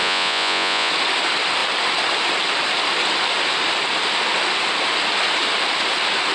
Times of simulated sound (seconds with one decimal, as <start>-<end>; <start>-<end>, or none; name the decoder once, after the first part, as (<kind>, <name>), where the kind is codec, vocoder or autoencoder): 0.0-0.9 (vocoder, Vocos)